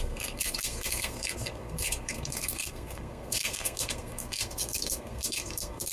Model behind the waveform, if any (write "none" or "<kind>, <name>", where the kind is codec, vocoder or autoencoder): codec, SNAC